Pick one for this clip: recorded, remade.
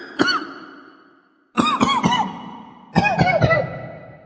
recorded